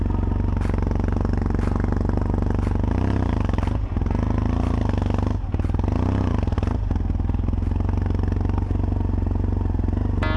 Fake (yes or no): no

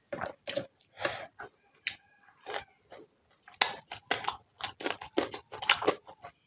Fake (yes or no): no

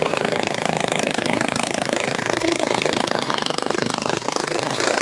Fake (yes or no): yes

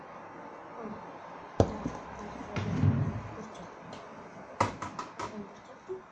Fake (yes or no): no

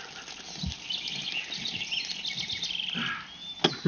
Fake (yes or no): no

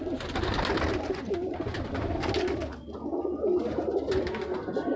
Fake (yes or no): no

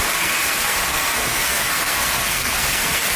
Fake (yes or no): yes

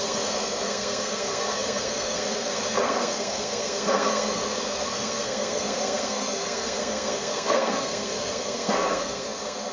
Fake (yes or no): yes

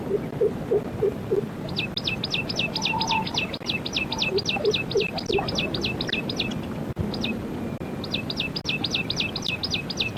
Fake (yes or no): no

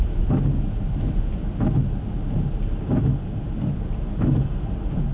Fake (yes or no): no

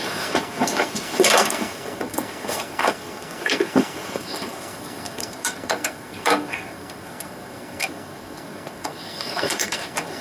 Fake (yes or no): yes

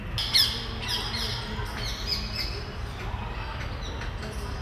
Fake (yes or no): no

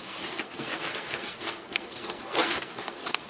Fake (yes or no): yes